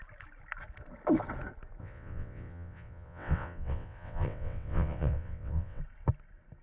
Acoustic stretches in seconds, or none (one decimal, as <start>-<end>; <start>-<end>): 0.0-1.8; 5.8-6.6